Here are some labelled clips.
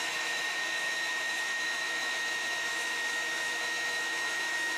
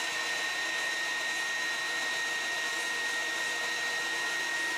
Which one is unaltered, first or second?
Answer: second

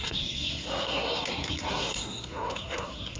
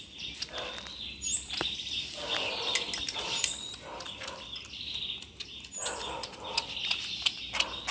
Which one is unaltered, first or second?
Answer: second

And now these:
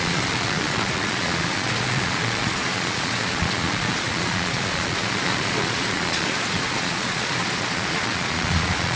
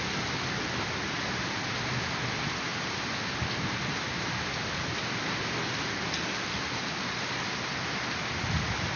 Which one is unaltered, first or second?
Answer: second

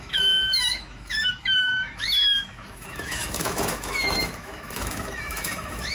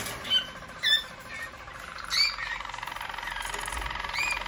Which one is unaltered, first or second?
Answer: second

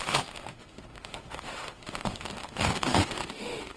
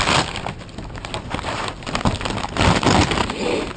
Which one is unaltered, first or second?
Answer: second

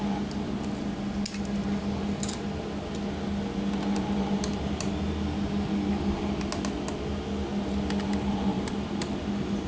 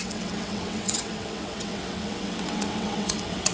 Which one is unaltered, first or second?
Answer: first